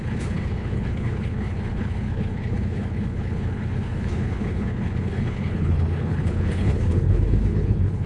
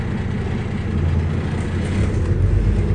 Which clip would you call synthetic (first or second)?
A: first